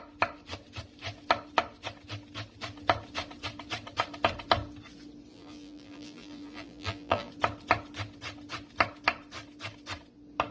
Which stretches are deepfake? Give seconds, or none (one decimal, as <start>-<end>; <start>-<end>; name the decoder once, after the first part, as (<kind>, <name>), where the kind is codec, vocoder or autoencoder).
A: 5.3-7.3 (vocoder, BigVGAN v2)